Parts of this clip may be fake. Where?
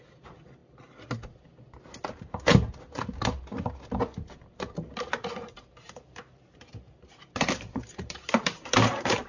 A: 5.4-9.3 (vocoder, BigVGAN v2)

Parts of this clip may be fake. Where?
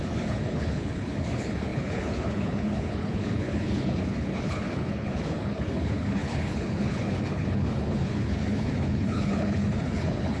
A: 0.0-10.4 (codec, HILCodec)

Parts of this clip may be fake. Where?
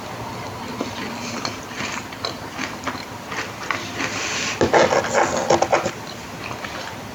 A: none